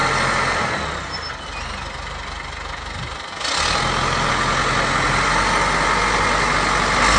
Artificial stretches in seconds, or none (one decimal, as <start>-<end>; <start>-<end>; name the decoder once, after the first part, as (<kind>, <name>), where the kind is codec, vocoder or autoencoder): none